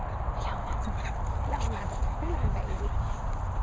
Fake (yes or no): no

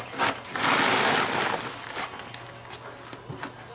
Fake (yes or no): no